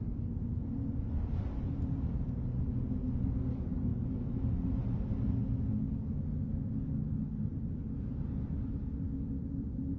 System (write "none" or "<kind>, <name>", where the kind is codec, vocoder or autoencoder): none